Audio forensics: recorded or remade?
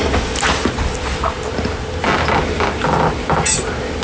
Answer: recorded